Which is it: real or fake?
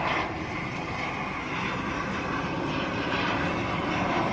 fake